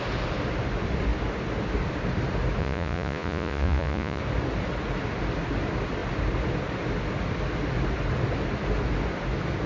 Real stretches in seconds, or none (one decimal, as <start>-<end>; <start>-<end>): 0.0-2.6; 4.2-9.7